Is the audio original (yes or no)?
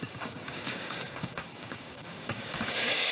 no